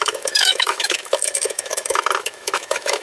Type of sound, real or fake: fake